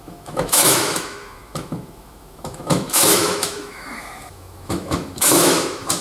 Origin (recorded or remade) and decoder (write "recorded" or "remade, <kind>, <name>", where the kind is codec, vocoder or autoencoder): remade, autoencoder, DAC-VAE